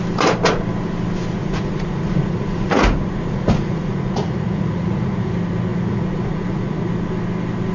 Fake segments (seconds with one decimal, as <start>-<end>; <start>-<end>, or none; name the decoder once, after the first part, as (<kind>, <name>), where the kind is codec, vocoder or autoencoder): 1.4-5.3 (vocoder, Vocos); 5.7-6.9